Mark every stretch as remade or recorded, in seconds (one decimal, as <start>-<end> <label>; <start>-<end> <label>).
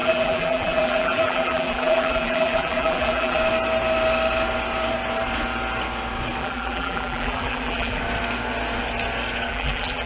0.0-3.4 remade; 3.4-6.4 recorded; 6.4-8.0 remade; 8.0-9.5 recorded; 9.5-10.1 remade